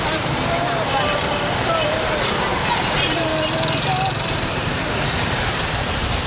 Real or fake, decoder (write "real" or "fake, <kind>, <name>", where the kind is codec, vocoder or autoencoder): fake, vocoder, BigVGAN v2